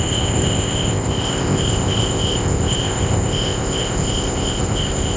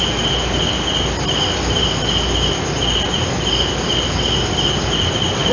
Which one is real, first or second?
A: second